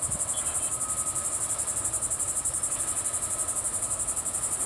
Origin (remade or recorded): recorded